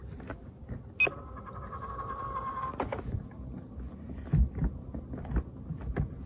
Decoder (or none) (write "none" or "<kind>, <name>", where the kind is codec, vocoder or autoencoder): none